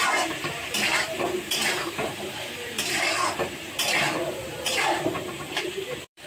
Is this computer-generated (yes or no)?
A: yes